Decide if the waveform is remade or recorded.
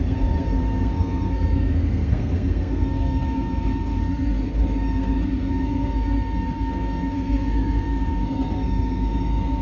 remade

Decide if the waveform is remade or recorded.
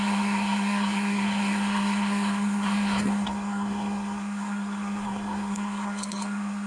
remade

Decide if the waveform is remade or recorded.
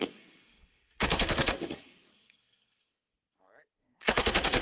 remade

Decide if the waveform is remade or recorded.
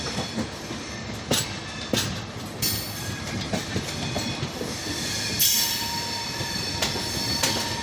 recorded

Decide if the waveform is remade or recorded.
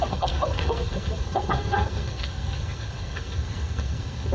remade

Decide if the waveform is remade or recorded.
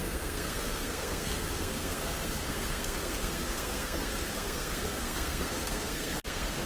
remade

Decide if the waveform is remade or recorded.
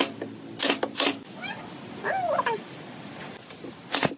recorded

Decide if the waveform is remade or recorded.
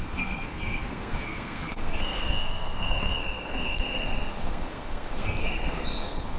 remade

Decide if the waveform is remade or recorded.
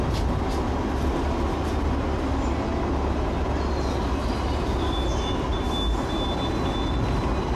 recorded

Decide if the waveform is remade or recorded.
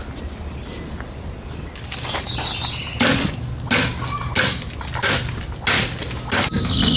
recorded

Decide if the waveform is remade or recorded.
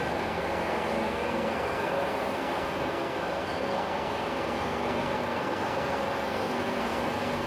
remade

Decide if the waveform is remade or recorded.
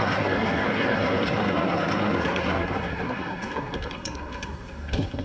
remade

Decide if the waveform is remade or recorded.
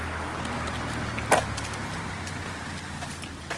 recorded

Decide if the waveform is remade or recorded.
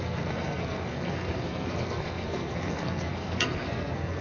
remade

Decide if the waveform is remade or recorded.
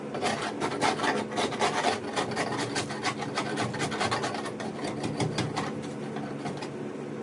recorded